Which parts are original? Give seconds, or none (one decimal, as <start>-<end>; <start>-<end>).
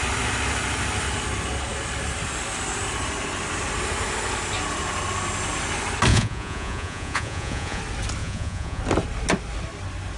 0.0-6.1; 7.8-8.2; 8.8-10.2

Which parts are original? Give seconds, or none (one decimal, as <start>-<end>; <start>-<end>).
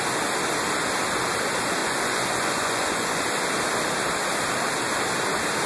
0.0-1.8; 3.2-5.7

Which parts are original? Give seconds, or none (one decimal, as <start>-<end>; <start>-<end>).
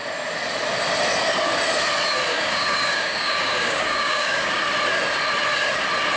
0.0-2.3; 4.6-6.2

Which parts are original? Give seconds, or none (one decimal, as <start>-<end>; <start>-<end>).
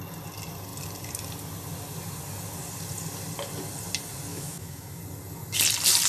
0.0-4.3; 5.0-6.1